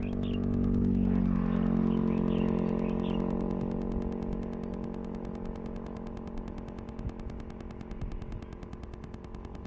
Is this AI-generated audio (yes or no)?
no